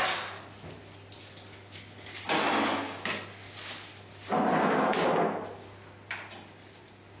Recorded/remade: recorded